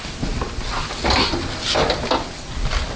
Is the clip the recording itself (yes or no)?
yes